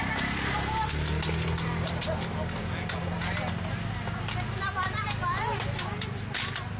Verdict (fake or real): real